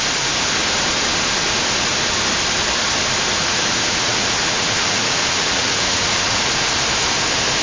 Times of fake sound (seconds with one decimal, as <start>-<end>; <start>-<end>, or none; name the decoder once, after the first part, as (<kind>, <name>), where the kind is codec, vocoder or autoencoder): 3.4-6.4 (vocoder, Vocos)